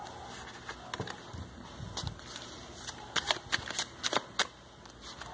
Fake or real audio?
real